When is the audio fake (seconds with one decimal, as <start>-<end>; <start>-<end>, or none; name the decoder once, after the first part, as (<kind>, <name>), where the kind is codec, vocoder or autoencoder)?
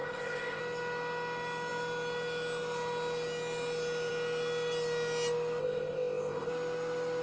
0.0-0.6 (codec, ZipCodec); 5.6-6.5